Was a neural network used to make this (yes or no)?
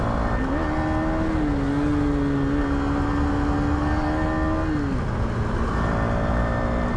no